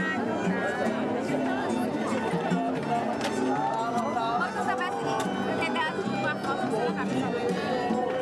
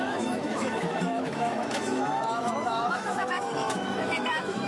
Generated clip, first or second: second